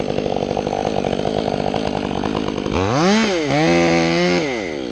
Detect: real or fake real